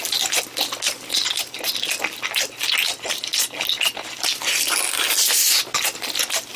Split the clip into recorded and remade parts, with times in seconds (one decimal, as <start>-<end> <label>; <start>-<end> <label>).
0.0-6.6 recorded